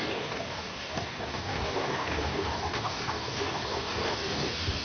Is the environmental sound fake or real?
fake